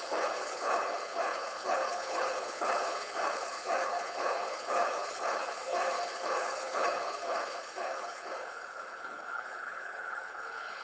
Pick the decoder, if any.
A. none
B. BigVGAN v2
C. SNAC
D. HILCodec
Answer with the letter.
D